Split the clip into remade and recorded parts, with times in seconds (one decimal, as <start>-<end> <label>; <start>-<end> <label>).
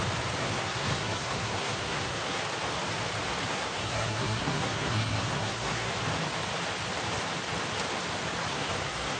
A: 0.0-0.4 recorded; 0.4-2.4 remade; 2.4-3.5 recorded; 3.5-5.9 remade; 5.9-8.5 recorded; 8.5-9.2 remade